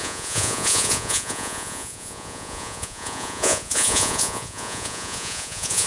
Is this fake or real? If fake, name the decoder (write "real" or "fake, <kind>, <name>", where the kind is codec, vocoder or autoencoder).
fake, vocoder, Vocos